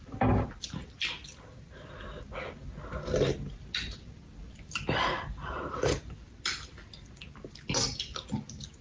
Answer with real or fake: real